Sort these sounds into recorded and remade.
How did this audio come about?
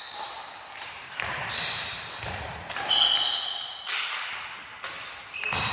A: recorded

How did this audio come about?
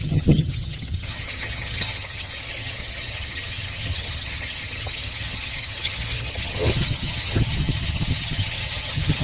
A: remade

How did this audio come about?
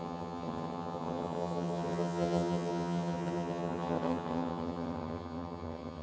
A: remade